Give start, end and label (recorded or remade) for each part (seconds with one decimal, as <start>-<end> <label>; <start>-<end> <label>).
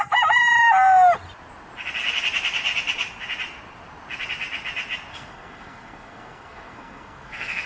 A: 0.0-5.1 recorded; 5.1-7.7 remade